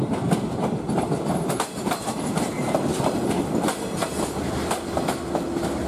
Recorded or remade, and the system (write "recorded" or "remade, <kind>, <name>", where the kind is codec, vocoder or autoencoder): recorded